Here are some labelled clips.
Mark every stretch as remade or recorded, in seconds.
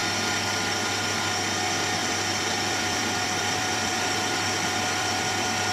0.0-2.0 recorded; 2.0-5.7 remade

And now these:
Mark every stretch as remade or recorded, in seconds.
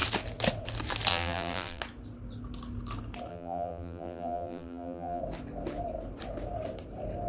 0.0-1.1 recorded; 1.1-1.8 remade; 1.8-3.3 recorded; 3.3-5.2 remade; 5.2-7.3 recorded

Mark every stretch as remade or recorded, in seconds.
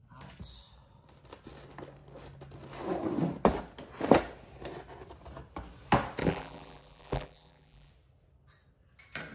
0.0-6.2 recorded; 6.2-7.9 remade; 7.9-9.3 recorded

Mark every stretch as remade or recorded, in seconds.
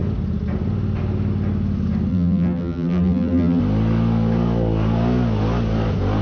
0.0-2.1 recorded; 2.1-3.6 remade; 3.6-6.2 recorded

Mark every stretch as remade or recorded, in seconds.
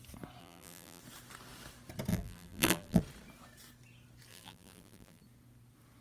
0.0-0.4 recorded; 0.4-1.0 remade; 1.0-2.1 recorded; 2.1-3.0 remade; 3.0-4.3 recorded; 4.3-5.2 remade; 5.2-6.0 recorded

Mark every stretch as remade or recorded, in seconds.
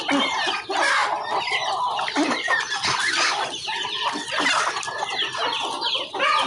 0.0-1.0 recorded; 1.0-4.6 remade; 4.6-6.5 recorded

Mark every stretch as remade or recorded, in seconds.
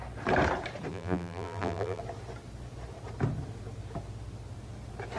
0.0-0.9 recorded; 0.9-2.0 remade; 2.0-5.2 recorded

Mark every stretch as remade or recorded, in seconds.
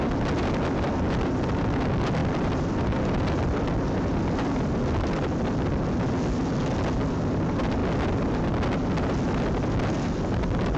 0.0-2.2 recorded; 2.2-3.2 remade; 3.2-10.8 recorded